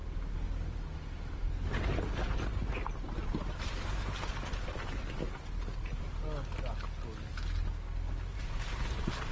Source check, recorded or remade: recorded